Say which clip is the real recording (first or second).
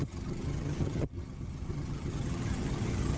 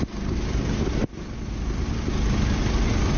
second